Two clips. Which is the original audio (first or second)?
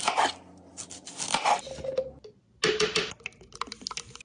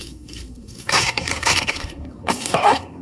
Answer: first